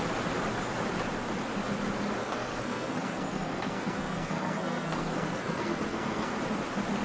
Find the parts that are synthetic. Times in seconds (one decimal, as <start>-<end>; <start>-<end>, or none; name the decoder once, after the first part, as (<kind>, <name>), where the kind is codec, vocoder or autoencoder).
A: 2.2-6.4 (codec, SNAC)